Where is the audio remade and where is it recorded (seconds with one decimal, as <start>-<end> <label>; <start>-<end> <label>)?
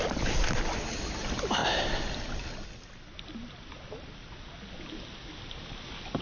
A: 0.0-6.2 recorded